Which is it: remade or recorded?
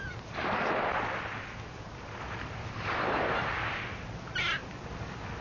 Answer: recorded